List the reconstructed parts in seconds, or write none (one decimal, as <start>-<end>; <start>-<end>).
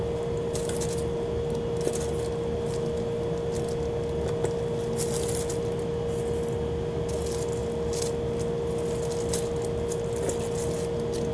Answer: none